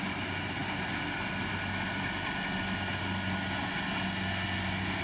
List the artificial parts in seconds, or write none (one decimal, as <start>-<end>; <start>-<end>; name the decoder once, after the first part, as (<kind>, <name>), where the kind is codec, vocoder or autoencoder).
none

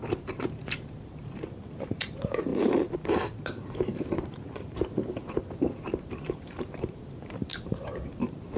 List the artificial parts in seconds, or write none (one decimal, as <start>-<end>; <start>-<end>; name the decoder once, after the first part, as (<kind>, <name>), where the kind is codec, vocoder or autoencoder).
0.0-8.6 (vocoder, BigVGAN v2)

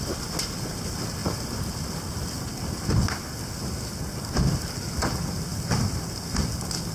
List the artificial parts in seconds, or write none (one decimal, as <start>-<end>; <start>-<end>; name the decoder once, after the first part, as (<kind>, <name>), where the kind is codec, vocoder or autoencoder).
none